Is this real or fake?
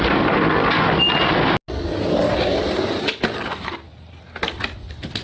real